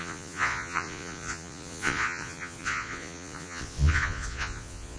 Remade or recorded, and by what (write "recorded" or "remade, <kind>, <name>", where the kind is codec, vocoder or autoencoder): remade, vocoder, Vocos